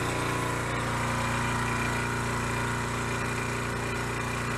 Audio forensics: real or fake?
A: real